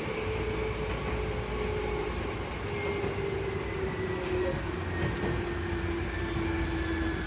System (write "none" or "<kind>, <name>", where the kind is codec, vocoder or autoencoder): none